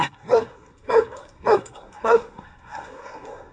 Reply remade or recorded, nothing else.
remade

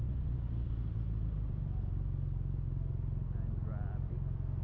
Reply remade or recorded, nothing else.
recorded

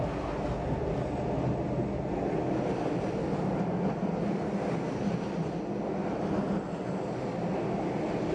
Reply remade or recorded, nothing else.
recorded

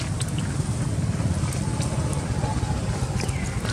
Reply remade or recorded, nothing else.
recorded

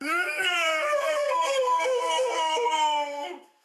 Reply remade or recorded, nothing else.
remade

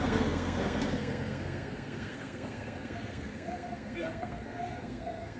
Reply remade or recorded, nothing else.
remade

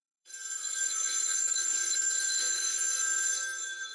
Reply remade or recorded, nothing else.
remade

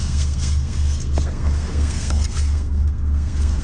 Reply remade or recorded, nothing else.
remade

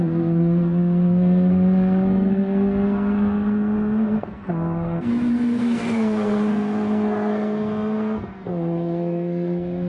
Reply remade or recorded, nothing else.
remade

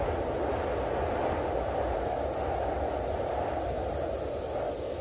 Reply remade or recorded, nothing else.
recorded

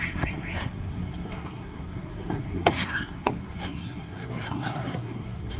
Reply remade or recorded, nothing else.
remade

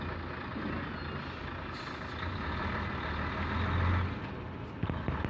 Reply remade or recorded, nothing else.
recorded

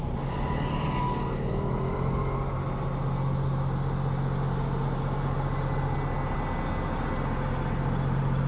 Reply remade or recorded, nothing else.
recorded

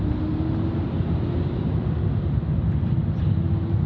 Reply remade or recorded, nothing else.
recorded